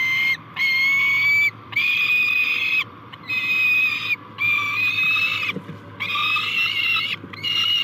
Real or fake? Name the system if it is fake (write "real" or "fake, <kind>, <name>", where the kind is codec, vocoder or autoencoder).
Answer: real